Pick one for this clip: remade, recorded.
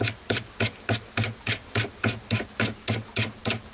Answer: recorded